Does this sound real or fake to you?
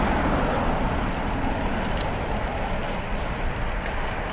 real